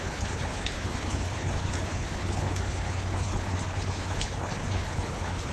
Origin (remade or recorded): remade